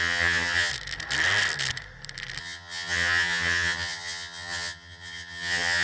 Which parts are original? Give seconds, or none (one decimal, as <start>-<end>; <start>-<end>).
0.7-2.4